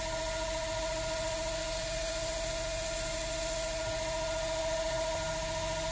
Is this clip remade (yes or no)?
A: no